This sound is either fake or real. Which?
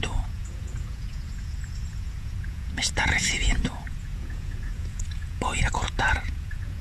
fake